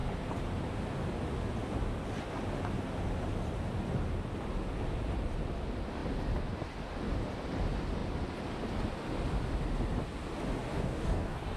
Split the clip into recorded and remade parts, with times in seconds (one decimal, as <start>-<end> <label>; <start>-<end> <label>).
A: 0.0-10.7 recorded; 10.7-11.6 remade